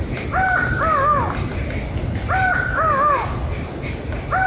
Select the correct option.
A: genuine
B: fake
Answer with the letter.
A